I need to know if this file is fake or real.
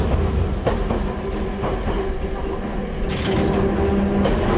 real